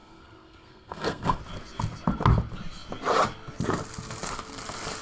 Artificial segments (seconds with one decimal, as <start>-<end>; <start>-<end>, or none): 0.0-1.4